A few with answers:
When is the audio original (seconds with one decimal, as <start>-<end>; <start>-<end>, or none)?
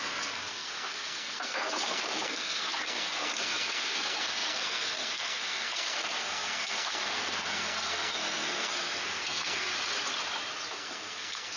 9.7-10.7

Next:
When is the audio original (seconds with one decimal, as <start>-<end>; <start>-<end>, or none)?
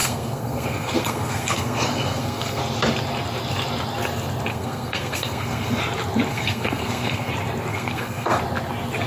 2.6-4.5; 5.8-6.3; 7.3-7.7; 8.4-9.1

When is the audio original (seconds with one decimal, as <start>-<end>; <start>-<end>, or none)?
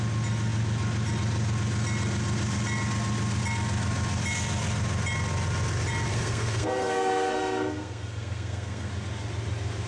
0.0-6.1; 8.9-9.9